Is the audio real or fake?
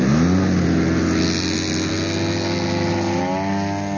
real